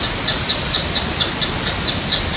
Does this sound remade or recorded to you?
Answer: recorded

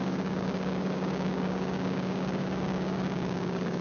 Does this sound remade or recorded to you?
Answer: remade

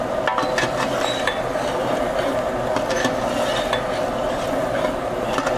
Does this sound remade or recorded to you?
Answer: recorded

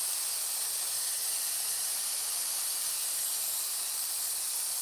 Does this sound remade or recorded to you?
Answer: recorded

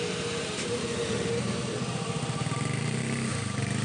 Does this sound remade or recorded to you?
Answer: remade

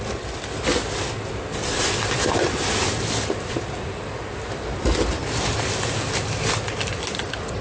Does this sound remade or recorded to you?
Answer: remade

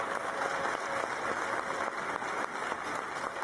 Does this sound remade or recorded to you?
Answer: recorded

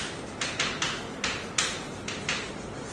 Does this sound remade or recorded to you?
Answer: recorded